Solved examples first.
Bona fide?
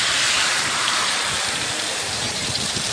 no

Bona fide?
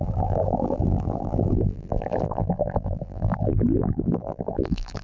no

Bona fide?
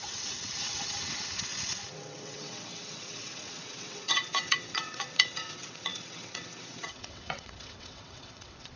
no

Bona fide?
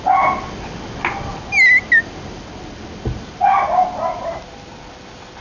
yes